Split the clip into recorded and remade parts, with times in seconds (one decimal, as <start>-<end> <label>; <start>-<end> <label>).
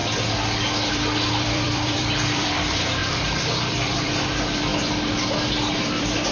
0.0-0.9 recorded; 0.9-4.7 remade; 4.7-5.8 recorded; 5.8-6.3 remade